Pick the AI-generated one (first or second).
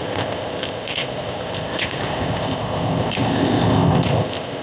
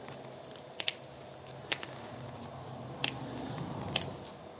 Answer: first